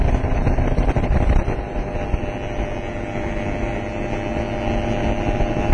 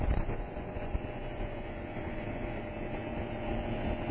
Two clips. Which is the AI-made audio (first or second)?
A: second